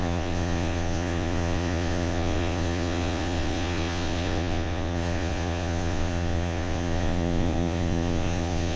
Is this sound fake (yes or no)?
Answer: yes